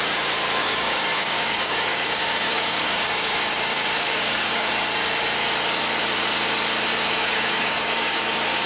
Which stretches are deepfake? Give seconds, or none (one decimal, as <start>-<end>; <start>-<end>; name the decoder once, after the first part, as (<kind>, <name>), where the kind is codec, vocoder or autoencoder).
0.6-4.7 (codec, DAC); 7.2-8.2